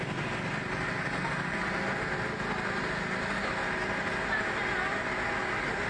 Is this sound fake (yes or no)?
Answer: no